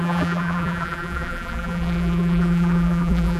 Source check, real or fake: fake